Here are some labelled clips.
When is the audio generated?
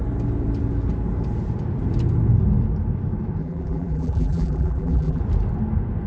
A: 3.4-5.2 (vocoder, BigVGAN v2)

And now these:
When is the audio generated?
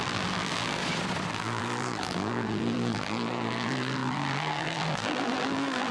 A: 0.0-0.8 (vocoder, BigVGAN v2); 1.3-5.9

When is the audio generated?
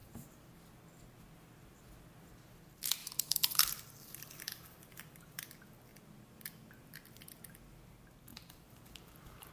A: 0.0-0.5 (vocoder, BigVGAN v2); 3.0-5.4; 8.3-9.5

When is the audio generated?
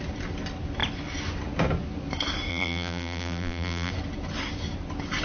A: 2.5-3.9 (vocoder, BigVGAN v2)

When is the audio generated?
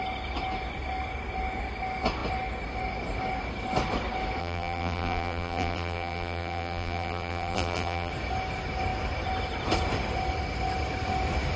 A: 4.4-8.1 (vocoder, BigVGAN v2)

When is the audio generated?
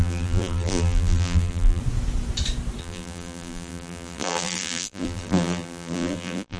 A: 0.0-1.8 (vocoder, BigVGAN v2); 2.8-6.6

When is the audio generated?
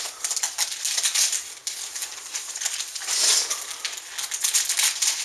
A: none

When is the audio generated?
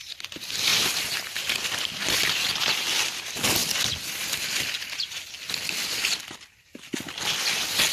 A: 0.7-1.9 (vocoder, BigVGAN v2)